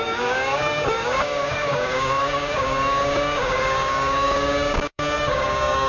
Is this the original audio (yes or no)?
no